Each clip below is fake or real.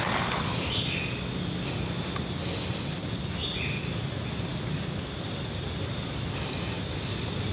real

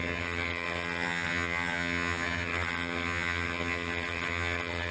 fake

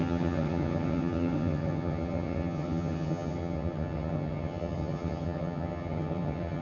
fake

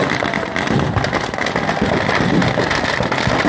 real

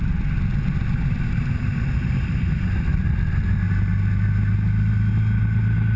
real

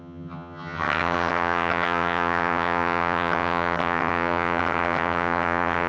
fake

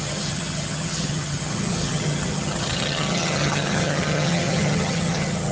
fake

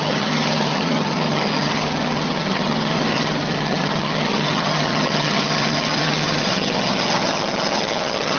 fake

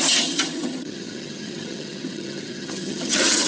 fake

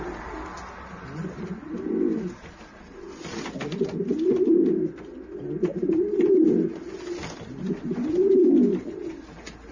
real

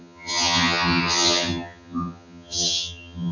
fake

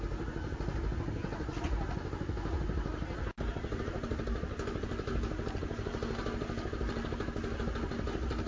real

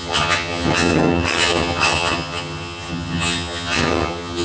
fake